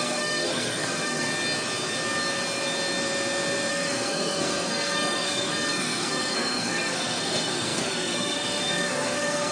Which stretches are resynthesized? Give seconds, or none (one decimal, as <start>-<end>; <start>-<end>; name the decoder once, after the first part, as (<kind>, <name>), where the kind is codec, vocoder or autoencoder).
0.0-1.3 (codec, SNAC); 3.7-9.5